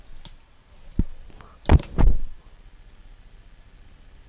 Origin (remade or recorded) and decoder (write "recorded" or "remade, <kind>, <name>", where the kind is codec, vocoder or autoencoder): recorded